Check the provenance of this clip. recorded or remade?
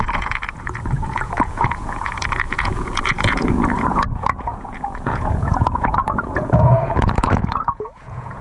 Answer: remade